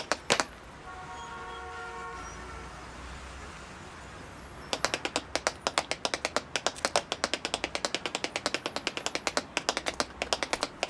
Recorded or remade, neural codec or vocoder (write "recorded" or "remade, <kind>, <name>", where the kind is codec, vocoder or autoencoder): recorded